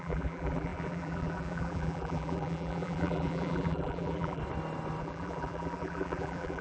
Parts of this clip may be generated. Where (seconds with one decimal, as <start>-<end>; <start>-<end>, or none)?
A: 0.0-4.4; 5.0-6.6